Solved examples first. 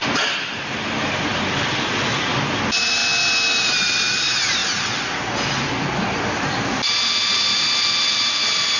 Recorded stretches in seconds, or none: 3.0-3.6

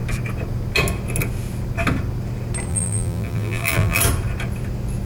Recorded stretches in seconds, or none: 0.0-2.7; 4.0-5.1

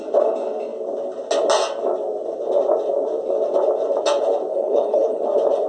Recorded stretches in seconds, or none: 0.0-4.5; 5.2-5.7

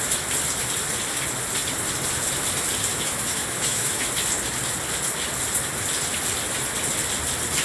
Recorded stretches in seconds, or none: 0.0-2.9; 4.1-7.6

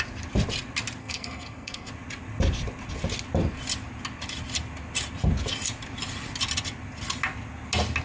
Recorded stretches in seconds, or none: 0.0-1.0; 1.9-8.0